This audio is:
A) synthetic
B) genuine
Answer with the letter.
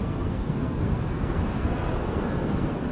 A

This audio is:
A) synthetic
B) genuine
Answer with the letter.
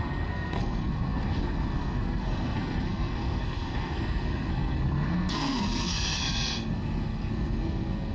A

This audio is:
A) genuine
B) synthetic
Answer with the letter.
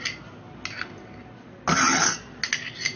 A